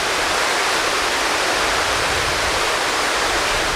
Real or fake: real